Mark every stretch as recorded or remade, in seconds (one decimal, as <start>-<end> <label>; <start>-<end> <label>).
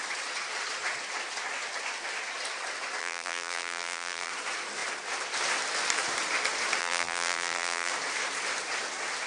0.0-3.0 recorded; 3.0-4.3 remade; 4.3-6.8 recorded; 6.8-7.9 remade; 7.9-9.3 recorded